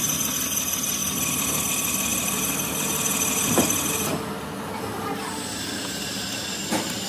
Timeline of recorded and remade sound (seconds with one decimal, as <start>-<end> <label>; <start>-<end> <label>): 0.0-7.1 recorded